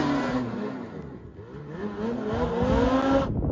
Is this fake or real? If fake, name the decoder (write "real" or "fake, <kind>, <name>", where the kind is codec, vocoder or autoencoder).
real